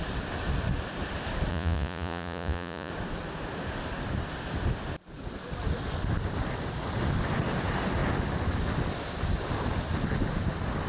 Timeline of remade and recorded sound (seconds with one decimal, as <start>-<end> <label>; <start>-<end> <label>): 0.0-1.5 recorded; 1.5-2.9 remade; 2.9-10.9 recorded